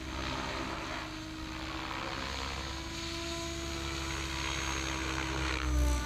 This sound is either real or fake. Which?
real